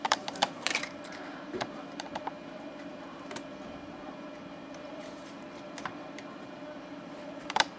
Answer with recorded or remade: remade